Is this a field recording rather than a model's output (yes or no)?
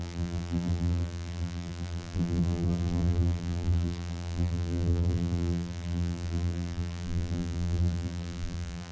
no